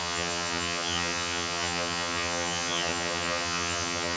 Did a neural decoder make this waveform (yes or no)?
yes